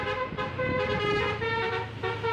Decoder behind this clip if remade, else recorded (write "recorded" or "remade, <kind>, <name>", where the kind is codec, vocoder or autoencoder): recorded